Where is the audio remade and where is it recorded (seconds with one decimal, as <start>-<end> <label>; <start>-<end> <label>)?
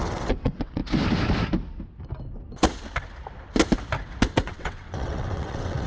0.0-0.8 remade; 0.8-4.3 recorded; 4.3-5.9 remade